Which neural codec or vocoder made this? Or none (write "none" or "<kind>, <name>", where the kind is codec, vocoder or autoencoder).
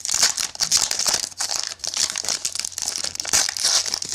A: none